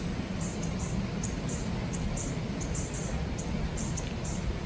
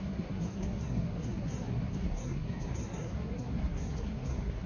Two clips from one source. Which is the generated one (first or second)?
second